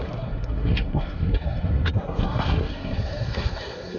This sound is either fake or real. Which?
fake